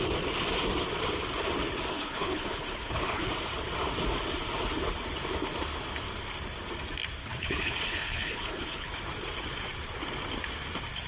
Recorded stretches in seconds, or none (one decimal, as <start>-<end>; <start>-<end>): 0.0-1.9; 3.3-7.2; 9.0-11.1